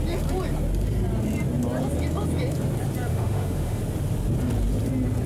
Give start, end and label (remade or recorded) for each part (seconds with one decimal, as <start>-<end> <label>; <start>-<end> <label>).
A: 0.0-3.1 recorded; 3.1-3.8 remade; 3.8-5.3 recorded